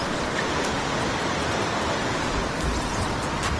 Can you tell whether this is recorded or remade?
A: recorded